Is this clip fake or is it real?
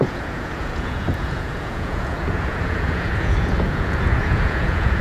fake